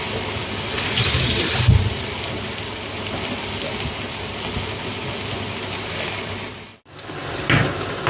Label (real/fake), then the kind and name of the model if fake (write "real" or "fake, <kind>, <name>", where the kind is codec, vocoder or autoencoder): real